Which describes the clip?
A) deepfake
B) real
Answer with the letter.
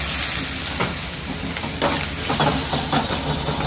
B